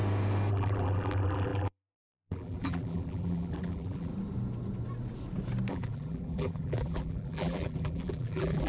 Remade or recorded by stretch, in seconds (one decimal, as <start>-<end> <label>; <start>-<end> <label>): 0.0-0.5 recorded; 0.5-4.1 remade; 4.1-5.7 recorded; 5.7-8.7 remade